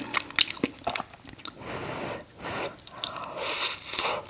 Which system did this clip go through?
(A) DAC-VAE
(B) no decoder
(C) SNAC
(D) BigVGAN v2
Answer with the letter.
B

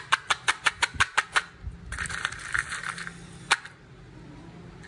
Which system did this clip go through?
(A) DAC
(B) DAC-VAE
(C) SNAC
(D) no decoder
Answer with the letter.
D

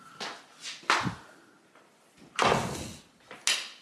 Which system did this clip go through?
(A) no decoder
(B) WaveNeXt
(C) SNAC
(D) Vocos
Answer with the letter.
A